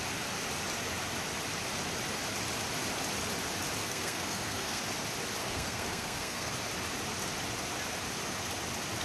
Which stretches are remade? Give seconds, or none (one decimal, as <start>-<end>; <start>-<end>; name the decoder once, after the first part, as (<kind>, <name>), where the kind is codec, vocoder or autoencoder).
3.8-4.8 (codec, SNAC); 5.4-6.5